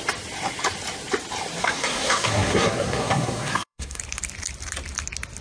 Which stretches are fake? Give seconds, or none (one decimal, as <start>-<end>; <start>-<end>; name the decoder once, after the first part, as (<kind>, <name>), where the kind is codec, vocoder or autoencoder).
1.6-4.0 (codec, SNAC)

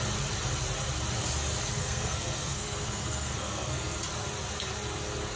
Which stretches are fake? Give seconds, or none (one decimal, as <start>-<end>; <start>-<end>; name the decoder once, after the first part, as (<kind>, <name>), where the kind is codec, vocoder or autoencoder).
1.8-4.0 (codec, SNAC)